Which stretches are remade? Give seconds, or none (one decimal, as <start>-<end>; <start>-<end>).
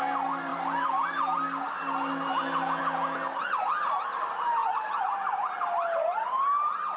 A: none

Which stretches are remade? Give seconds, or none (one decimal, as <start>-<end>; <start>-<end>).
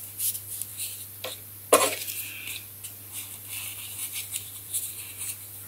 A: 4.0-5.1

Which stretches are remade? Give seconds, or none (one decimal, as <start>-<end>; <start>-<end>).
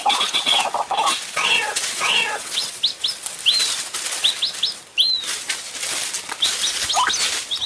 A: 0.0-0.5; 1.3-2.8